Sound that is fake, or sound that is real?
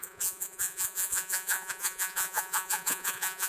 fake